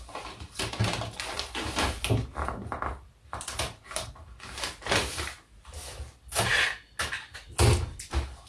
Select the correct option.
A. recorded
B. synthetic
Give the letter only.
A